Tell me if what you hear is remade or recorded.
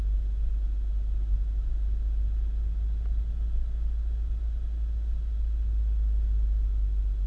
recorded